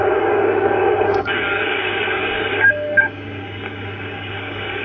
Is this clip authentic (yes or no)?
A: no